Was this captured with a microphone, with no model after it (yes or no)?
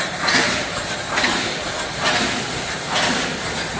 yes